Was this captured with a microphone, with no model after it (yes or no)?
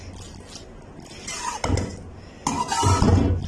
yes